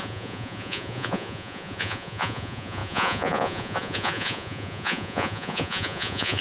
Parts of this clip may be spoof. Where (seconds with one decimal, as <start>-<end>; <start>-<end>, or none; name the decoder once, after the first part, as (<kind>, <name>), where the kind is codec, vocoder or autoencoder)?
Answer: 0.0-6.4 (vocoder, Vocos)